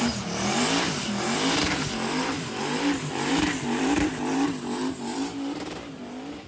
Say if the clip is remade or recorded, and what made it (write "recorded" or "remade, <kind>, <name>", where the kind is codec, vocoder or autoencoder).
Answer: remade, vocoder, BigVGAN v2